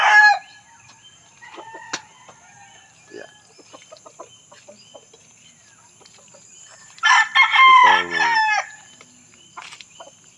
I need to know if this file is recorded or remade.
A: recorded